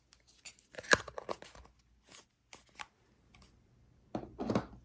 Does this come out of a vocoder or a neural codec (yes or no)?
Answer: no